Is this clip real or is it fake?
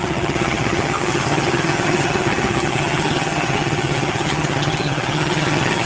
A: fake